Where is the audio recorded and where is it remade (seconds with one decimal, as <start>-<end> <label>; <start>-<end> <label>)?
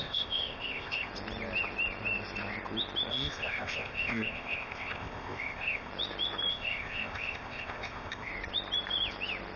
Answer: 0.0-1.1 remade; 1.1-3.1 recorded; 3.1-5.9 remade; 5.9-6.5 recorded; 6.5-8.3 remade; 8.3-9.6 recorded